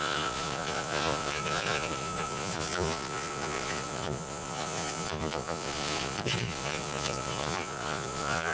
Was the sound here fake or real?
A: fake